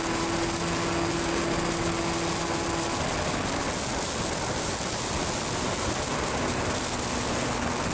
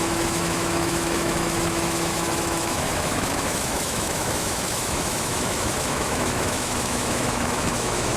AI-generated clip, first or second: second